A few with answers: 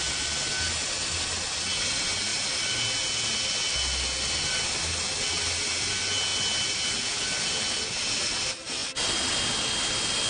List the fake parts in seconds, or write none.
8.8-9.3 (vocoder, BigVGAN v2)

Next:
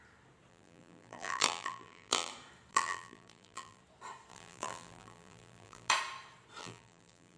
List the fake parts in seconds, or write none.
0.5-2.3 (vocoder, BigVGAN v2); 2.7-3.8; 4.3-5.9; 6.6-7.4

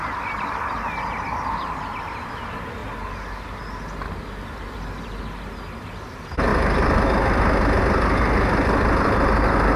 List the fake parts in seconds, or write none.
1.3-1.9 (vocoder, BigVGAN v2)

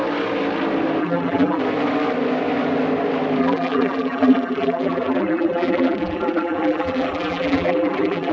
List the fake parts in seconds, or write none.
1.0-1.6 (vocoder, BigVGAN v2); 3.4-8.3